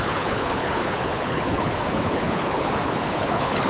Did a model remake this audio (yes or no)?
yes